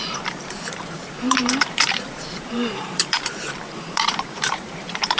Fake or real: fake